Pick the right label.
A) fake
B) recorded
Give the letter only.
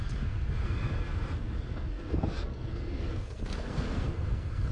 A